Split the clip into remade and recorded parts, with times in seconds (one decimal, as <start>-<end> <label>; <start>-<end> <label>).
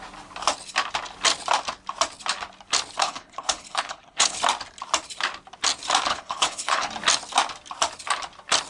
0.0-3.0 recorded; 3.0-4.4 remade; 4.4-6.1 recorded; 6.1-6.9 remade; 6.9-8.7 recorded